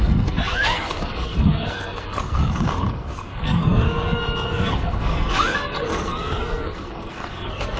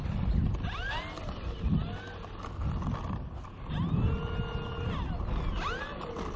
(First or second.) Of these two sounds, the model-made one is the first